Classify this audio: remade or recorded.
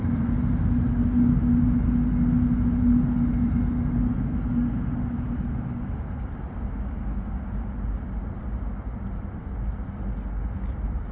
recorded